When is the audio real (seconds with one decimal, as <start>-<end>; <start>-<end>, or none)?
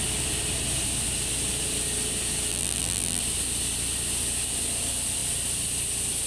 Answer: 0.0-2.5; 3.2-6.3